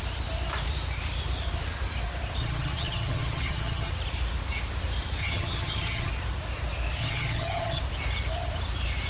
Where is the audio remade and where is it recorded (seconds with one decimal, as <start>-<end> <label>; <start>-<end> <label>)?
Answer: 0.0-2.4 recorded; 2.4-3.9 remade; 3.9-5.2 recorded; 5.2-6.1 remade; 6.1-7.0 recorded; 7.0-7.8 remade; 7.8-9.1 recorded